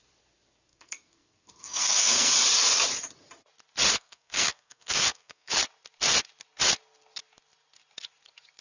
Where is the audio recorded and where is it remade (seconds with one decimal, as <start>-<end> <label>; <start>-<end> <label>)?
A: 0.0-0.7 recorded; 0.7-2.3 remade; 2.3-3.9 recorded; 3.9-5.6 remade; 5.6-8.6 recorded